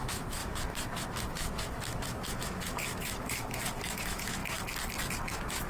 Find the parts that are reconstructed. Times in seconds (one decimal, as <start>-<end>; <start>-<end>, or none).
0.0-4.4; 5.2-5.7